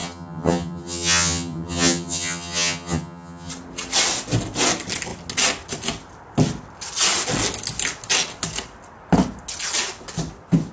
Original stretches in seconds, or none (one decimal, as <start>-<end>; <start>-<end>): 3.5-10.7